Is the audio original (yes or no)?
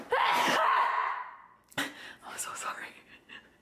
yes